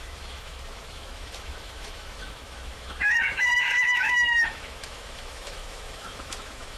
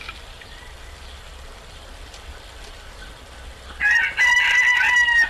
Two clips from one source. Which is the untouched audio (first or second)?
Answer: second